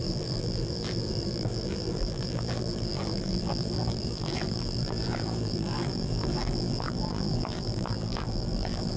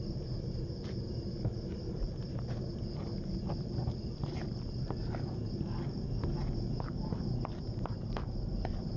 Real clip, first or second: second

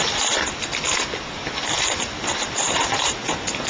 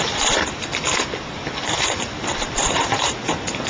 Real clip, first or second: first